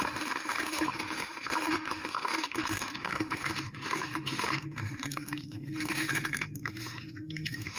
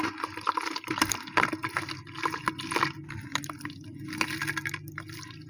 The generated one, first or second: first